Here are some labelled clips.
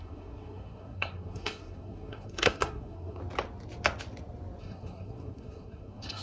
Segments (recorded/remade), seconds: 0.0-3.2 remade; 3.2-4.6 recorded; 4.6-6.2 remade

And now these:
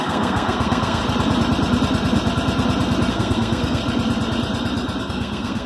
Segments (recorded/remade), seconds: 0.0-1.0 remade; 1.0-3.1 recorded; 3.1-3.8 remade; 3.8-5.0 recorded; 5.0-5.7 remade

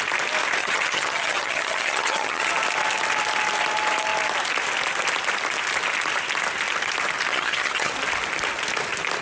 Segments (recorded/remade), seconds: 0.0-0.6 recorded; 0.6-2.5 remade; 2.5-7.3 recorded; 7.3-7.9 remade; 7.9-9.2 recorded

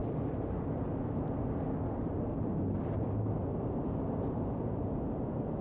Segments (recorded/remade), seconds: 0.0-5.6 recorded